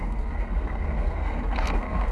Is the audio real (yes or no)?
no